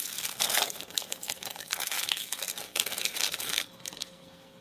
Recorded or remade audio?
remade